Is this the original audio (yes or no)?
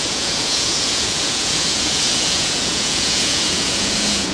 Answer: no